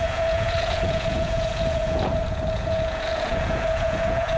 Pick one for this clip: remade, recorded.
remade